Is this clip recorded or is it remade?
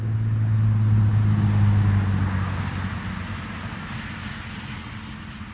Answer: recorded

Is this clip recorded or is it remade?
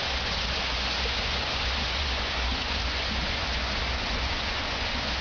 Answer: remade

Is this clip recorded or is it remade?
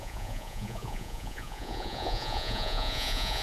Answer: remade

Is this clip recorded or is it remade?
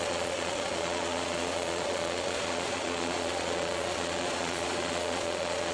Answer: remade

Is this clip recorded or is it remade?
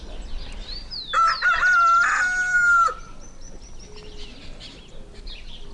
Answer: recorded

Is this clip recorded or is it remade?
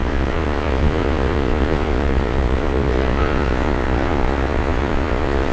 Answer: remade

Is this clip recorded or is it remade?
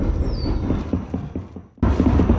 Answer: recorded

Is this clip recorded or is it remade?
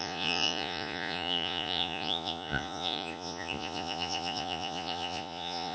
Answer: remade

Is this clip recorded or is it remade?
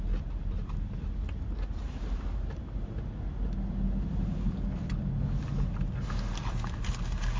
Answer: recorded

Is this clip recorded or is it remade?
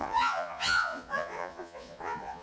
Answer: remade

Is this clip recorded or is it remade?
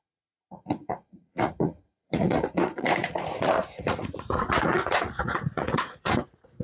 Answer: remade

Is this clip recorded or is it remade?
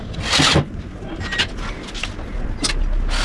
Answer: recorded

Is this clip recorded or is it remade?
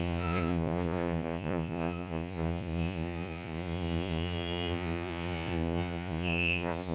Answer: remade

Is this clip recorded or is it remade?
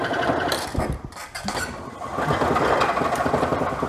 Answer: recorded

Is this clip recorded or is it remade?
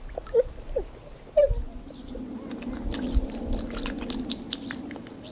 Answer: recorded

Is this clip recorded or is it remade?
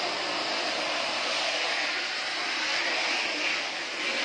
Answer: recorded